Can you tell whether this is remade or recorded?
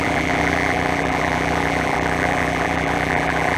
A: remade